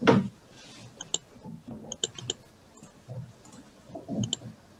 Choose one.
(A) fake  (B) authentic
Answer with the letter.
B